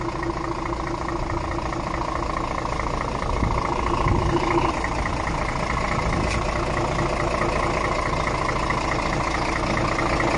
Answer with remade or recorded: recorded